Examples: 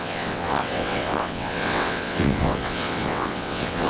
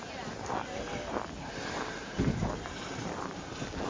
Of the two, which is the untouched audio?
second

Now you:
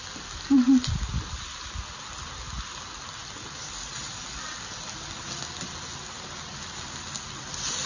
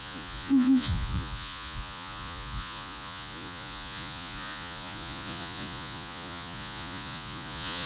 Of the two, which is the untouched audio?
first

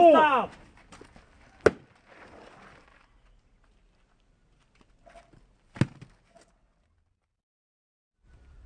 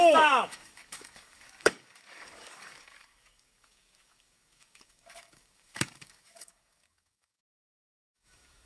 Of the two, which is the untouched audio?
first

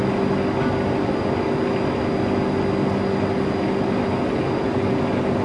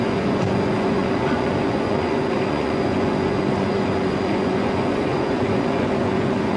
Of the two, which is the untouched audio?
first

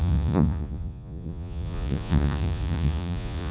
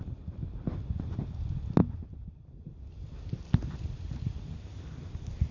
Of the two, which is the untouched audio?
second